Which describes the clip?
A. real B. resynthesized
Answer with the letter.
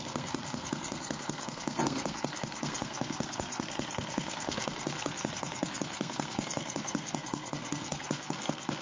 B